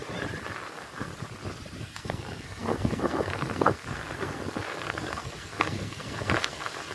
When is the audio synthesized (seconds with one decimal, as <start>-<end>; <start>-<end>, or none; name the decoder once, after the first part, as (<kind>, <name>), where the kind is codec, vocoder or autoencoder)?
0.7-1.1 (codec, SNAC); 1.8-6.9

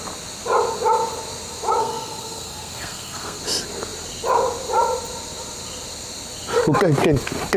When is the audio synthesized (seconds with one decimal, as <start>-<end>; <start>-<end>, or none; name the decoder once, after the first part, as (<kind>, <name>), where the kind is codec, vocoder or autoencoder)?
1.8-3.4 (codec, SNAC)

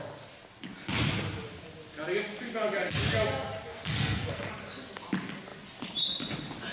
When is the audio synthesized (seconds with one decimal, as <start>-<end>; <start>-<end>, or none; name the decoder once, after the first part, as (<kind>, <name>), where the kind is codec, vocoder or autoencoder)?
3.7-4.5 (codec, SNAC)

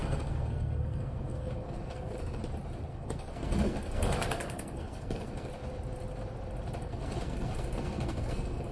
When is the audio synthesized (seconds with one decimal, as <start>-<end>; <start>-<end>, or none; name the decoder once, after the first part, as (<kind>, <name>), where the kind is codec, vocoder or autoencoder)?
0.0-2.4 (codec, SNAC); 2.9-5.5; 6.8-8.7

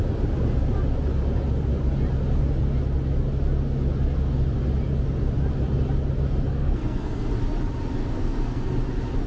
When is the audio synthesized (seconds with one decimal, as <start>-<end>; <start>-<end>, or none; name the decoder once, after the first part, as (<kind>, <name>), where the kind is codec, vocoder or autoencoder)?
6.5-7.3 (codec, SNAC); 8.0-8.6